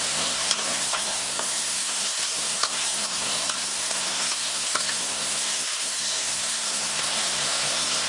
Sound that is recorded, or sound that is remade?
remade